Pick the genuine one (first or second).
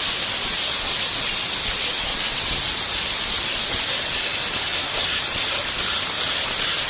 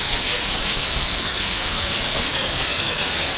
first